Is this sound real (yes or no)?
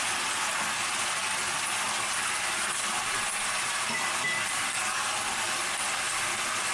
yes